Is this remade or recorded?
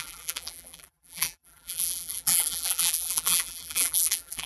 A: remade